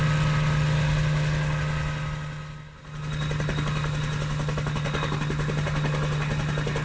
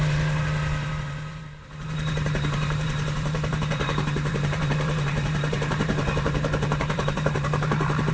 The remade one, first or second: second